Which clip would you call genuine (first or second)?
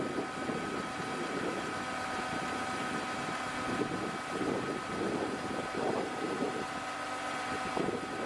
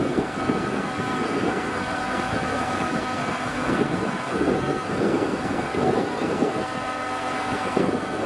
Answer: first